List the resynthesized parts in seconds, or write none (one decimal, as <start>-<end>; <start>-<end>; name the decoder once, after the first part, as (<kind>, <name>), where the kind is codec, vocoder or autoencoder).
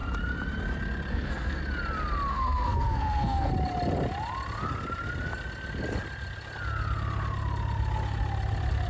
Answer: 1.1-1.6 (codec, SNAC); 2.3-3.5